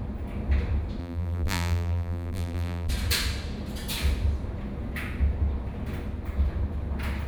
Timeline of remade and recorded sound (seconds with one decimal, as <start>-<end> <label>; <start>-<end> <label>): 0.0-1.0 recorded; 1.0-2.9 remade; 2.9-7.3 recorded